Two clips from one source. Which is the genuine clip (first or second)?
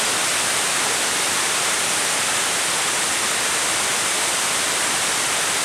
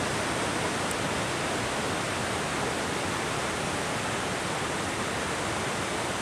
second